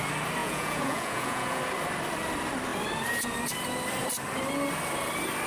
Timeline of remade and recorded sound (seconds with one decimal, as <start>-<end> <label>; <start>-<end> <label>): 0.0-0.4 recorded; 0.4-1.6 remade; 1.6-5.5 recorded